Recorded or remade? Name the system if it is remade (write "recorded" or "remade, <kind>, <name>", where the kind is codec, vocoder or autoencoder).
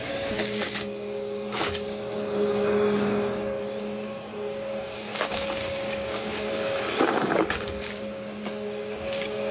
remade, codec, DAC